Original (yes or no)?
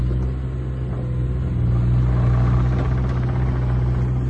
yes